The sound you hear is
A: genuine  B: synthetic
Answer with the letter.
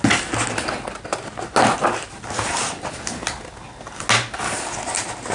A